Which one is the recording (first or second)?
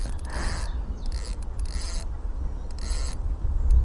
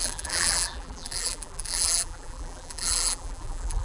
first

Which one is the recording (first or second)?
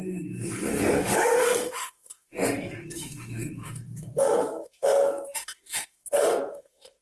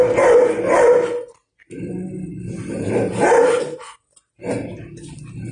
second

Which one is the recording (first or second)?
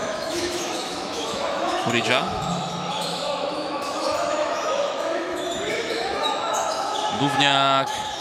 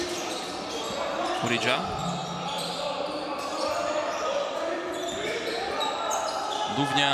second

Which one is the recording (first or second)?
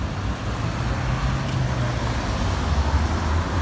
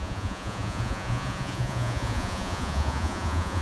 first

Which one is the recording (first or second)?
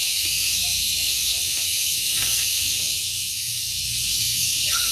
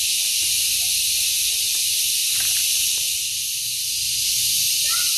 second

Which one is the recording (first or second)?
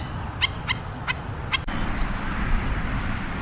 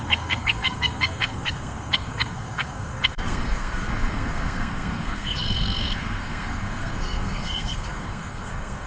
first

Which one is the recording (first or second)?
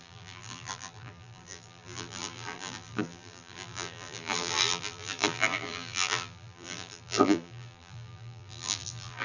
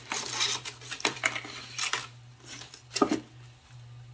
second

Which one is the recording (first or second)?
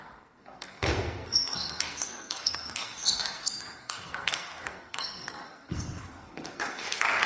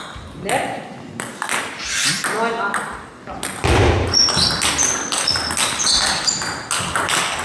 second